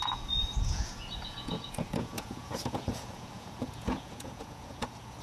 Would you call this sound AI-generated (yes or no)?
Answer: yes